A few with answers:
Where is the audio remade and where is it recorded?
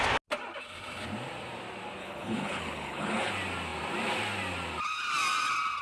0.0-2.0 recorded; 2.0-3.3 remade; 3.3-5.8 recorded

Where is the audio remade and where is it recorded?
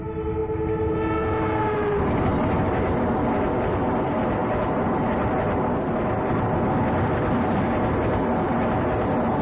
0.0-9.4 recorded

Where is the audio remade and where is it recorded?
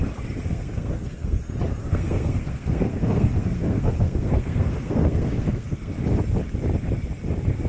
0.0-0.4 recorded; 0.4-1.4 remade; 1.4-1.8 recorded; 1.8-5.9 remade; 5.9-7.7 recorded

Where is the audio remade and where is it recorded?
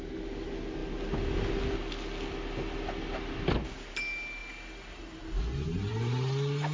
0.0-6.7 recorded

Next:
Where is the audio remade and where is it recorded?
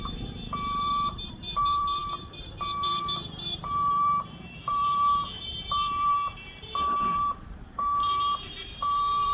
0.0-9.3 remade